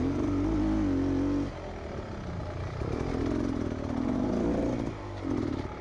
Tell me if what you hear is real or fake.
real